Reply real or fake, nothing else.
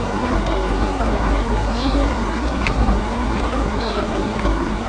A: fake